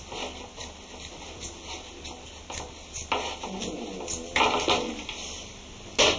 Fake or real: real